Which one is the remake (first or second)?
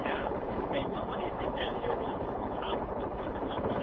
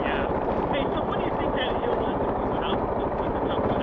first